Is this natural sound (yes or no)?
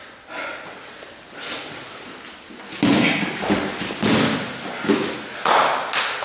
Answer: yes